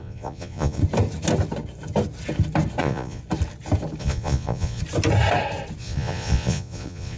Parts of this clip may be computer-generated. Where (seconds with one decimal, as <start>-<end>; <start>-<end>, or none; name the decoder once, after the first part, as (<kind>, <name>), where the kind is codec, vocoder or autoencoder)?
0.0-0.8 (vocoder, Vocos); 2.8-3.2; 4.0-4.8; 5.8-7.2